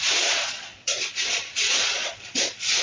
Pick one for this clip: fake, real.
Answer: fake